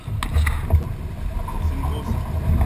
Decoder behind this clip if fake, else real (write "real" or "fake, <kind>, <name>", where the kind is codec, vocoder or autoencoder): real